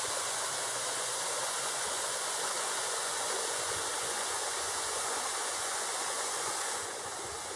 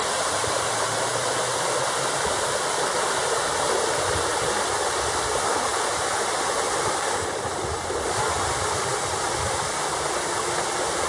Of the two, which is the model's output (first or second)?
first